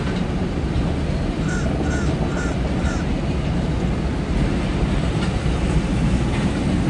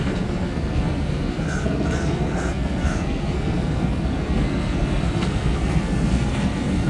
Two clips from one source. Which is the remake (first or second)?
second